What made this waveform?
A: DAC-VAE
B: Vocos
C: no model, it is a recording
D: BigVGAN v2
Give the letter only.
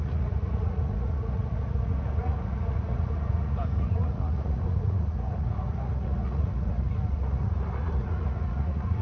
B